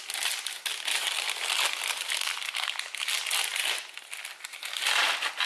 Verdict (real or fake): real